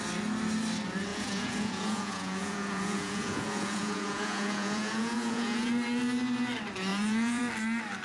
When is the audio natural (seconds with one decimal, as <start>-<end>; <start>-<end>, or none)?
0.0-1.1; 5.7-6.9; 7.4-8.0